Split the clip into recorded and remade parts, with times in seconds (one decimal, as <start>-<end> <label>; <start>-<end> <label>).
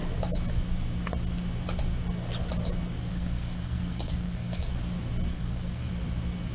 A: 0.0-3.1 recorded; 3.1-4.7 remade; 4.7-5.3 recorded; 5.3-5.9 remade; 5.9-6.5 recorded